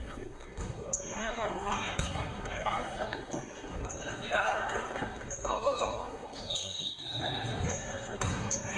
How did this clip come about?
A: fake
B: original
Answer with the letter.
A